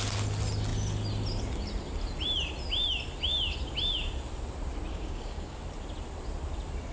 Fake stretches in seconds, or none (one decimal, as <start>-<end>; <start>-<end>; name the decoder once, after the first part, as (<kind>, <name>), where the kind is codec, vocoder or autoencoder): 4.9-5.6 (codec, DAC)